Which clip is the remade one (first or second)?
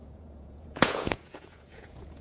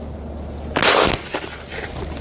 first